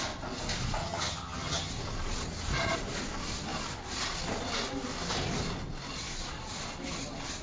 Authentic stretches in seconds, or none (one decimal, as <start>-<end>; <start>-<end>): 0.0-0.8; 1.7-7.4